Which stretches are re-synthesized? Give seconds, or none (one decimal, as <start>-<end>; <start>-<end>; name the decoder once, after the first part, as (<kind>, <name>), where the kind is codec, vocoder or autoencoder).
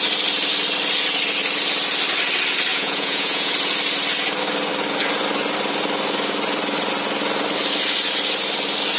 2.7-3.5 (vocoder, Vocos)